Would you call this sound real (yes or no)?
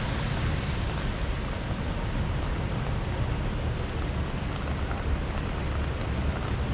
yes